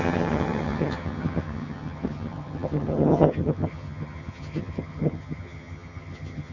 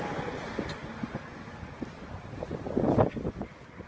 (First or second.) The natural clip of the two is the second